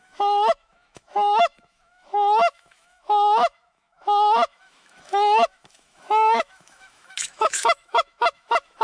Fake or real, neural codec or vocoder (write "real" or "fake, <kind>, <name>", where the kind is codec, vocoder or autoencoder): fake, autoencoder, DAC-VAE